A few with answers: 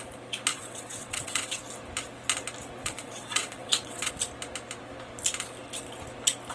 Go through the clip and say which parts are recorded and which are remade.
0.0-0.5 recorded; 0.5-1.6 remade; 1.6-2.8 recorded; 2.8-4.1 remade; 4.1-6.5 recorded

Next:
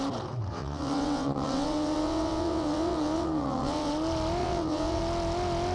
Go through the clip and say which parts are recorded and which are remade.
0.0-0.5 recorded; 0.5-3.9 remade; 3.9-4.4 recorded; 4.4-5.0 remade; 5.0-5.7 recorded